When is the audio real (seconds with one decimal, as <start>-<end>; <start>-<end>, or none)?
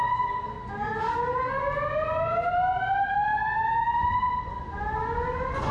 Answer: 0.0-1.0; 1.6-5.7